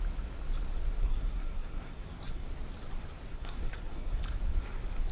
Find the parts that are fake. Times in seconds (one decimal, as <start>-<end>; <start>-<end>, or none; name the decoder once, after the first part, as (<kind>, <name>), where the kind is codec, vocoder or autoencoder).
1.0-2.5 (codec, SNAC); 3.3-4.2